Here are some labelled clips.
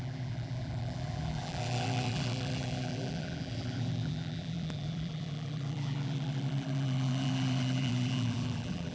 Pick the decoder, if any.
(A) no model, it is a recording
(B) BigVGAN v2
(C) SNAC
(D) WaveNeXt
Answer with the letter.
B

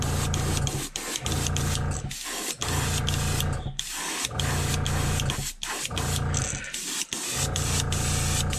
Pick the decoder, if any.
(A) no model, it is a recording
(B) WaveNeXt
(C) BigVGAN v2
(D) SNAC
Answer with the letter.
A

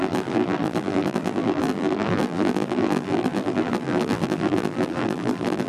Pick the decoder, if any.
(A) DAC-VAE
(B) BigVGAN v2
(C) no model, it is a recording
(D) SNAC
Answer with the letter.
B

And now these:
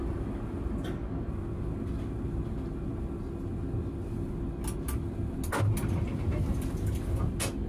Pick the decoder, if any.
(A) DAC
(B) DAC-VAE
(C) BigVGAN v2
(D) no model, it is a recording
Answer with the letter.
D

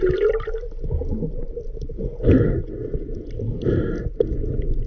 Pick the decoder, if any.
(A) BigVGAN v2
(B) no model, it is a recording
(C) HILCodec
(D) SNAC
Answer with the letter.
B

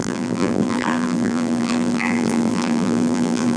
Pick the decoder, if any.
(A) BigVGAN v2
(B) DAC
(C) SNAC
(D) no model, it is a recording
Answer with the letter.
A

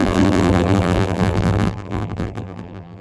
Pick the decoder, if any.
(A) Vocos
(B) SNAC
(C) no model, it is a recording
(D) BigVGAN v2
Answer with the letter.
D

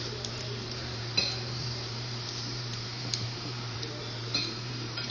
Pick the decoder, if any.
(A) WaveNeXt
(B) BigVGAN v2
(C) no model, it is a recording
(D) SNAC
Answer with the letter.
B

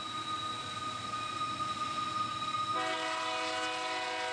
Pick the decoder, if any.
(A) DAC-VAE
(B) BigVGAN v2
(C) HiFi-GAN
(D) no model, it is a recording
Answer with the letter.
D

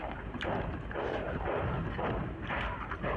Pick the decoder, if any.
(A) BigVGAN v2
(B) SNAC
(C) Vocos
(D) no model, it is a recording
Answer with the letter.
A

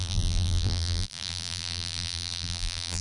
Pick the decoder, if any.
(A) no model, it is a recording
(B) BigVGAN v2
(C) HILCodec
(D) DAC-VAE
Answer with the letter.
B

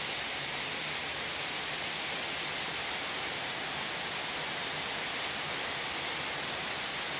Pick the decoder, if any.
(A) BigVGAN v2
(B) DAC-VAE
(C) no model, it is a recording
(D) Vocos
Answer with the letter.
C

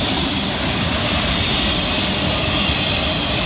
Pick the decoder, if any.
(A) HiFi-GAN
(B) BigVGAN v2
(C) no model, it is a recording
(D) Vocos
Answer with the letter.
B